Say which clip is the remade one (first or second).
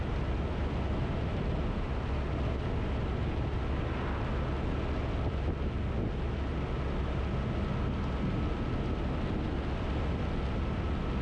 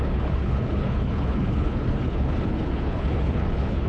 second